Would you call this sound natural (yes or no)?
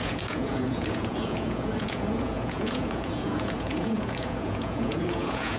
no